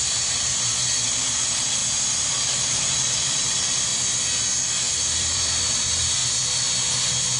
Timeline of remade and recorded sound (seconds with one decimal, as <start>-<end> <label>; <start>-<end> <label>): 0.0-1.8 remade; 1.8-2.3 recorded; 2.3-3.9 remade; 3.9-4.8 recorded; 4.8-6.2 remade; 6.2-7.4 recorded